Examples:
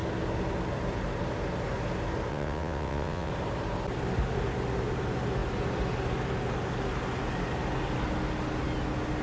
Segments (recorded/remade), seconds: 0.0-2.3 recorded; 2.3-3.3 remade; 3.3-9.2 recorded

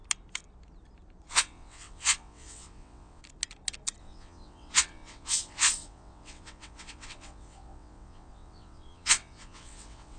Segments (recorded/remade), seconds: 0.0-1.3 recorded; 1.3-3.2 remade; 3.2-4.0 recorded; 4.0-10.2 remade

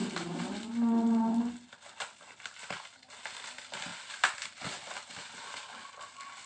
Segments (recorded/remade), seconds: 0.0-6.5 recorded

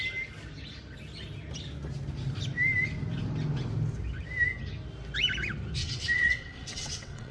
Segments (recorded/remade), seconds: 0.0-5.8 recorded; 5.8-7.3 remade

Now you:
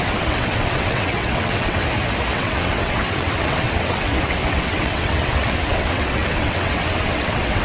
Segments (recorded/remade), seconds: 0.0-1.8 remade; 1.8-2.3 recorded; 2.3-7.6 remade

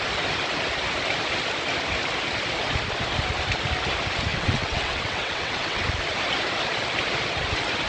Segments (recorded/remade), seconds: 0.0-4.3 recorded; 4.3-5.8 remade; 5.8-7.9 recorded